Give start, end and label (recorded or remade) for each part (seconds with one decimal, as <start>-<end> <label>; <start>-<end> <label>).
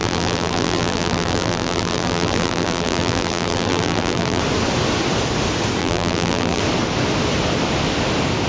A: 0.0-4.4 remade; 4.4-5.8 recorded; 5.8-6.6 remade; 6.6-8.5 recorded